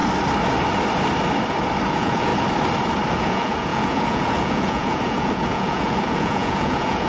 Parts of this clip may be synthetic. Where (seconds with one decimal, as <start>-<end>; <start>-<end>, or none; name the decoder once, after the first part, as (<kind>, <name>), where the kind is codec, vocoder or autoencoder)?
1.9-2.3 (vocoder, Vocos); 3.1-7.1